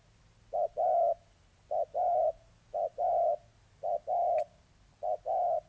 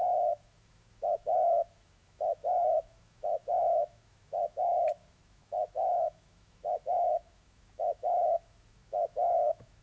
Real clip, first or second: first